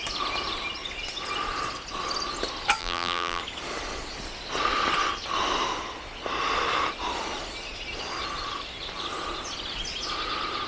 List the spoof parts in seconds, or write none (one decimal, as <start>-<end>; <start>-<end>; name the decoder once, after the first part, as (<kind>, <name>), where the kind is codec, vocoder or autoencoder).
2.8-3.4 (vocoder, BigVGAN v2)